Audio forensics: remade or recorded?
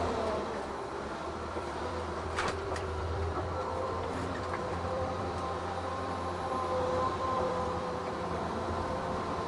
remade